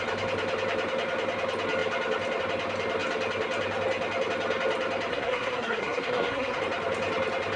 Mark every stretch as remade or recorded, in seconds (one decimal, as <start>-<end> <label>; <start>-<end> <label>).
0.0-5.1 recorded; 5.1-6.6 remade; 6.6-7.6 recorded